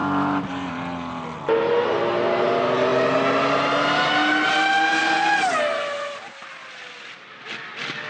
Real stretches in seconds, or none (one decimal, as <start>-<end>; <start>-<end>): 0.0-8.1